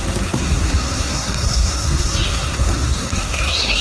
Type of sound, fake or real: fake